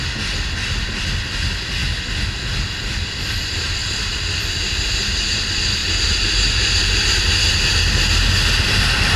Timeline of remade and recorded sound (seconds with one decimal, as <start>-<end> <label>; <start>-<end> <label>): 0.0-3.8 recorded; 3.8-4.6 remade; 4.6-5.8 recorded; 5.8-7.5 remade; 7.5-9.2 recorded